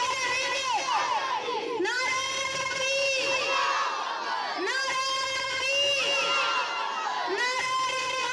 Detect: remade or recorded recorded